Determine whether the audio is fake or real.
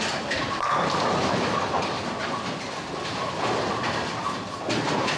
real